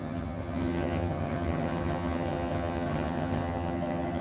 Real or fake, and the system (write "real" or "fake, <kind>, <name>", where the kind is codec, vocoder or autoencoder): fake, vocoder, HiFi-GAN